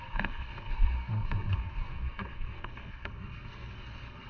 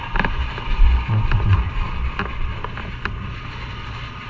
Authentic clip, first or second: second